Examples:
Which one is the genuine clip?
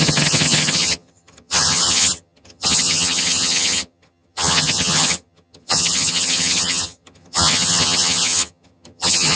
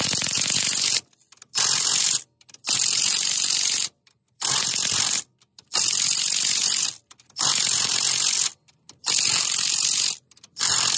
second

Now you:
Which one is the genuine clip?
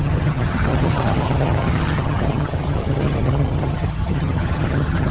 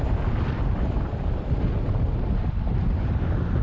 second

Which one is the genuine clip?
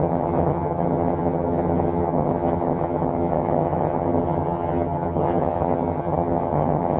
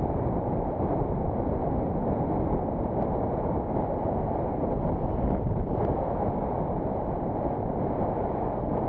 second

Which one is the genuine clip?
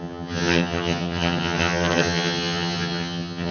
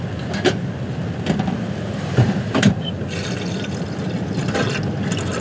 second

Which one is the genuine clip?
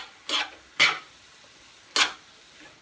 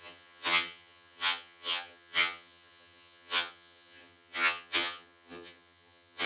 first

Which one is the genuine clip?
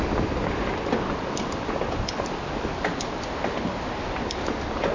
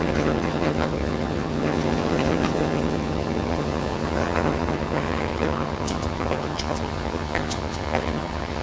first